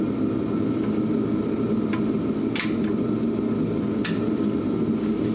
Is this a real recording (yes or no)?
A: yes